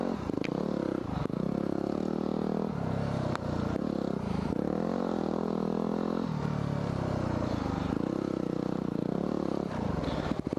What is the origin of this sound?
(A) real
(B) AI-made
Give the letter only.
A